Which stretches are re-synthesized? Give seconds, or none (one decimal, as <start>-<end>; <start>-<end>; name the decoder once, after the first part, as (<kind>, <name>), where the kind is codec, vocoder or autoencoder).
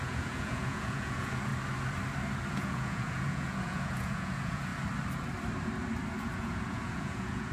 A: 0.0-1.5 (vocoder, Vocos); 2.5-4.7; 6.2-7.5